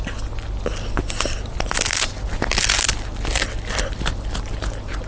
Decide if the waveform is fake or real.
real